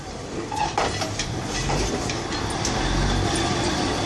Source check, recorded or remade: recorded